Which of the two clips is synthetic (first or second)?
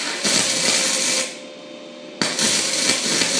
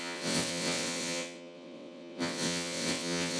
second